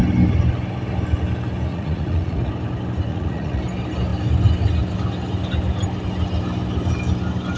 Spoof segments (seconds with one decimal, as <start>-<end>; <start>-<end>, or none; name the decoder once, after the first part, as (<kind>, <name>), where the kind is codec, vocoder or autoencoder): 1.7-2.5 (vocoder, Vocos); 3.1-3.6

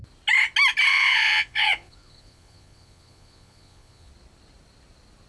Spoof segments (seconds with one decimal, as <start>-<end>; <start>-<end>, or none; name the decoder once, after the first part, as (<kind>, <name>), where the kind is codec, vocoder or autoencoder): 0.9-4.1 (vocoder, Vocos)

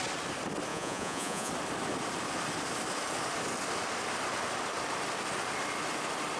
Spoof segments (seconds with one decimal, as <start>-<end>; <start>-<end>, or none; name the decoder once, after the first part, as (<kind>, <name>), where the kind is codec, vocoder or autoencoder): 0.7-1.5 (vocoder, Vocos)

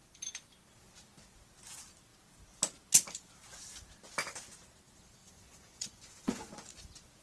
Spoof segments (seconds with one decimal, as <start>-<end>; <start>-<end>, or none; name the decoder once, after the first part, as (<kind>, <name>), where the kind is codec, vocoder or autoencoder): 5.2-6.5 (vocoder, Vocos)

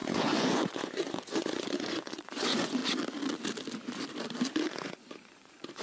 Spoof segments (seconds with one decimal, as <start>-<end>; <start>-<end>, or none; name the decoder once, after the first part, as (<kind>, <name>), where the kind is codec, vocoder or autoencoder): 0.0-2.8 (vocoder, Vocos); 4.7-5.8

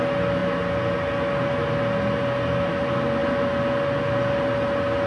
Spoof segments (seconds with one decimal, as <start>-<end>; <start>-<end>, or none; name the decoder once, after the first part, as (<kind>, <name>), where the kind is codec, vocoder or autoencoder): none